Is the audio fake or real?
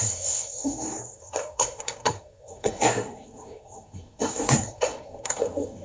fake